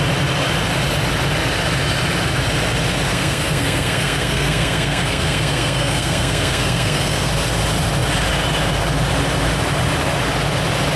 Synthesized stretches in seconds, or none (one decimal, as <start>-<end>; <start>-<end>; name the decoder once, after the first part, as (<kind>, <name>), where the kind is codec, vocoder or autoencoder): 3.1-7.3 (codec, SNAC)